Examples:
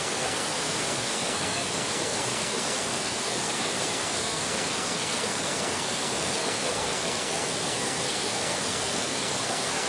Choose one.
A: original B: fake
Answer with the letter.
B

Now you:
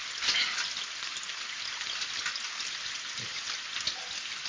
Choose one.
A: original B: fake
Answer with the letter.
A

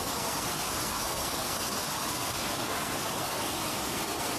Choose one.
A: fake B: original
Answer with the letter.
A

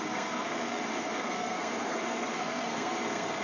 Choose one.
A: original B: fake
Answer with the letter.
B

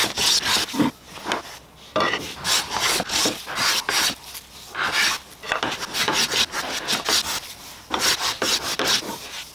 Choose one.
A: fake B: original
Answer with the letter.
B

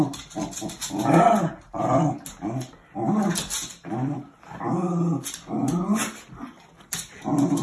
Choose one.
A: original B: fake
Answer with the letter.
A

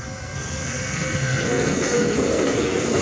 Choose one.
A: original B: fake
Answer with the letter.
B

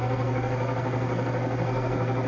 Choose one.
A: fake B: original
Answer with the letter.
A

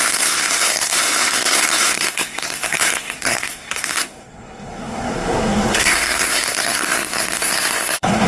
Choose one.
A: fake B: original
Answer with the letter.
A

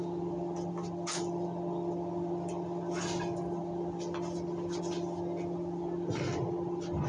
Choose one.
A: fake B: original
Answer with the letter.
B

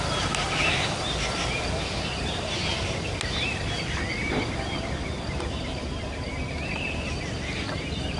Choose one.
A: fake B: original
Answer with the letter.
B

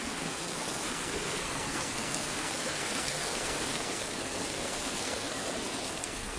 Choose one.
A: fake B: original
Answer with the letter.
A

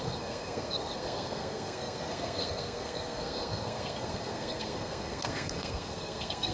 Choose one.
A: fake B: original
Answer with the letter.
A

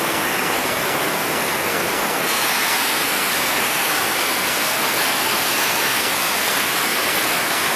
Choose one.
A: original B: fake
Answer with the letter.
B